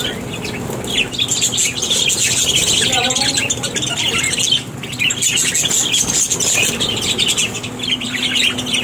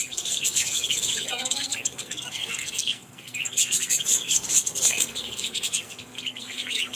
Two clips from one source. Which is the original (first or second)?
first